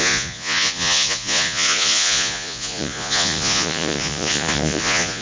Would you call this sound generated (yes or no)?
yes